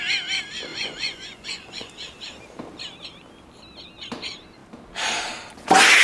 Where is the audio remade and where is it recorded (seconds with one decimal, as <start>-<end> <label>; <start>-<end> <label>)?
0.0-0.7 recorded; 0.7-1.9 remade; 1.9-6.0 recorded